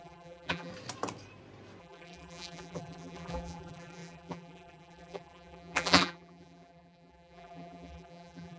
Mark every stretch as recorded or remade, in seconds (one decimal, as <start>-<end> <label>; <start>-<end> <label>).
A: 0.0-0.7 remade; 0.7-1.8 recorded; 1.8-8.6 remade